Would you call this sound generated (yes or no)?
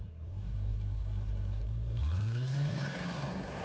yes